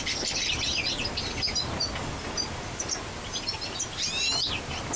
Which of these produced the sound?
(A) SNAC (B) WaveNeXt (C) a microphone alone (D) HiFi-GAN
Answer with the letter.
C